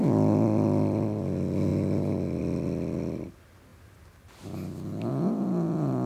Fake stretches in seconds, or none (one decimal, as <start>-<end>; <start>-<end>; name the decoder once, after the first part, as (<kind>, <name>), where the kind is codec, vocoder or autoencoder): none